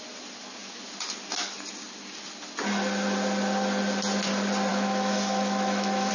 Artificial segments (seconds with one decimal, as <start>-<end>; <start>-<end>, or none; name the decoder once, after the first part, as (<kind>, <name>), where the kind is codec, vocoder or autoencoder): 4.7-6.1 (autoencoder, DAC-VAE)